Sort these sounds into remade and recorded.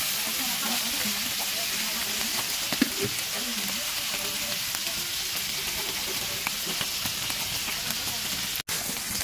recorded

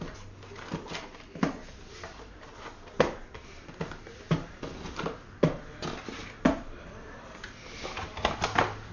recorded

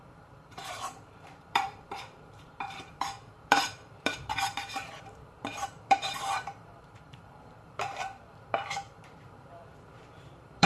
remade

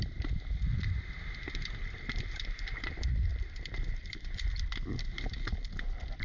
remade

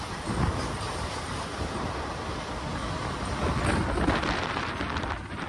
recorded